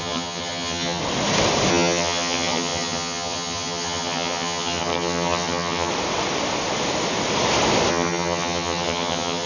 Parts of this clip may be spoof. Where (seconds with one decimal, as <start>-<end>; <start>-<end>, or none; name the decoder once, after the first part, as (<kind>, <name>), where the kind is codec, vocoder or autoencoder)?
0.0-1.0 (vocoder, HiFi-GAN); 1.7-5.9; 7.9-9.5